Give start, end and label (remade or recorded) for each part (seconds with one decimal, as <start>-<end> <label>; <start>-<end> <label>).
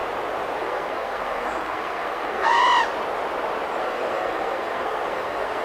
0.0-0.6 recorded; 0.6-2.6 remade; 2.6-3.8 recorded; 3.8-5.6 remade